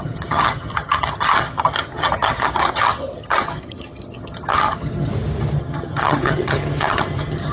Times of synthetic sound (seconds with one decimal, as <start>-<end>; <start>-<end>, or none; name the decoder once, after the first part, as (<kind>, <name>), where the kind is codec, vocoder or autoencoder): 0.0-5.1 (vocoder, HiFi-GAN); 5.6-7.5